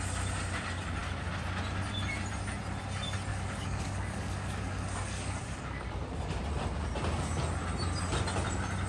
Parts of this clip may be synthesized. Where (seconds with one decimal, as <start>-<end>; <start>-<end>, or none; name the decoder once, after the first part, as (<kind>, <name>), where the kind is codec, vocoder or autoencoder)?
3.3-6.4 (codec, DAC)